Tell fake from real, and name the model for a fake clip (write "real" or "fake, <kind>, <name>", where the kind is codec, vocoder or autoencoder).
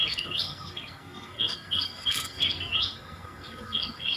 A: fake, codec, SNAC